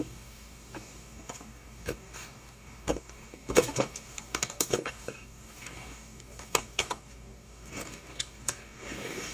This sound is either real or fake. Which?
fake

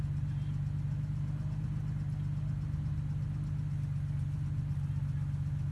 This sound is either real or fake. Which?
real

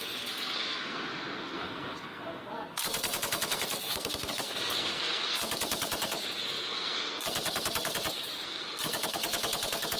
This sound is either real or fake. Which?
fake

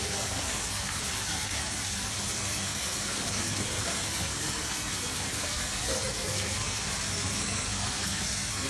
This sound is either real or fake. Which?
fake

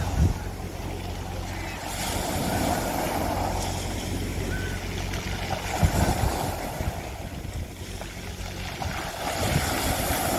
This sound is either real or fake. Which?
real